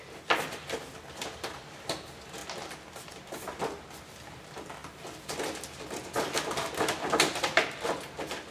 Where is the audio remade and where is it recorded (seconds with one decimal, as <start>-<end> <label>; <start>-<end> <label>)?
0.0-8.5 recorded